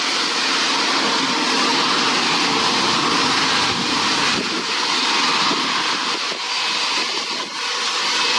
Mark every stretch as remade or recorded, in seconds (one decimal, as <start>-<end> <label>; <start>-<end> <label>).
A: 0.0-8.4 recorded